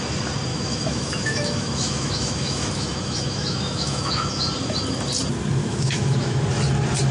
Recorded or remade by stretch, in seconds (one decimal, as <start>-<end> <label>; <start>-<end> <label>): 0.0-0.5 recorded; 0.5-4.3 remade; 4.3-5.6 recorded; 5.6-6.4 remade; 6.4-7.1 recorded